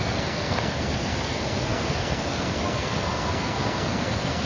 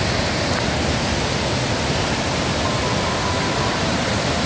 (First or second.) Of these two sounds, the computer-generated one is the first